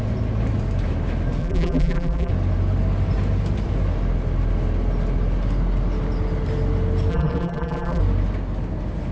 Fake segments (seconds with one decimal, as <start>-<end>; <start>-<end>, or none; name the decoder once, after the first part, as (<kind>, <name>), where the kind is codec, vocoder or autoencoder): 1.4-2.3 (vocoder, BigVGAN v2); 7.1-8.0